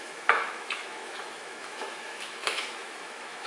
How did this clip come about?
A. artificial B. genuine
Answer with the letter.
A